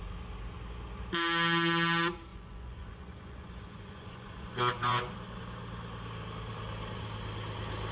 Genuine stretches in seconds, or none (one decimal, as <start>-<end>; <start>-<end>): 0.0-2.3; 5.1-7.9